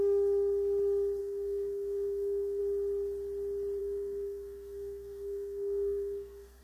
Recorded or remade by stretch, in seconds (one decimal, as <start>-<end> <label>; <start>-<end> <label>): 0.0-1.2 recorded; 1.2-2.6 remade; 2.6-3.8 recorded; 3.8-6.6 remade